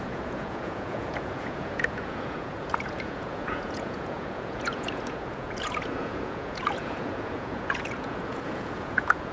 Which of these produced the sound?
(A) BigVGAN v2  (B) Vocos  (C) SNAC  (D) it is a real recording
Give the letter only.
B